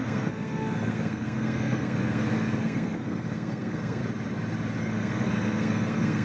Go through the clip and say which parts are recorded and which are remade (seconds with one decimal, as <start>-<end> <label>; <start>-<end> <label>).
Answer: 0.0-4.0 remade; 4.0-4.8 recorded; 4.8-6.2 remade